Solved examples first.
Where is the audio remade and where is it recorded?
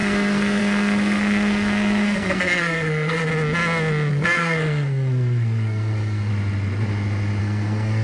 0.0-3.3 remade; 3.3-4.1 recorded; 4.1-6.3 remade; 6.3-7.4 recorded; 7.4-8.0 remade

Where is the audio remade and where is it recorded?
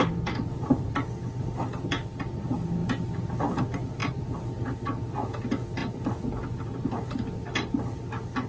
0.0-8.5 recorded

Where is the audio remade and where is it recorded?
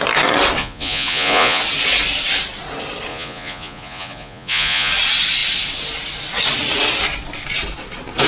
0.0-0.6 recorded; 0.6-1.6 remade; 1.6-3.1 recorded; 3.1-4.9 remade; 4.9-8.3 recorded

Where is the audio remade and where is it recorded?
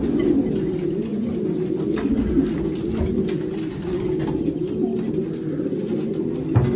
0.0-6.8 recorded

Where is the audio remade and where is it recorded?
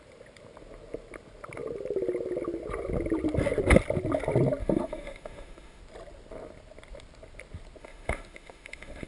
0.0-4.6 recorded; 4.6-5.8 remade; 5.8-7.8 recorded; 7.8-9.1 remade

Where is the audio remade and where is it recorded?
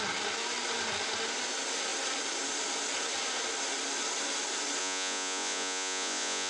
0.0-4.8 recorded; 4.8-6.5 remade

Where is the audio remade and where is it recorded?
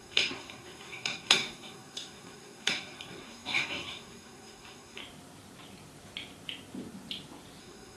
0.0-5.0 remade; 5.0-7.6 recorded; 7.6-8.0 remade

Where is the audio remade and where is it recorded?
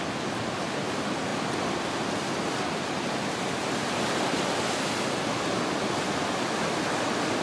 0.0-7.4 recorded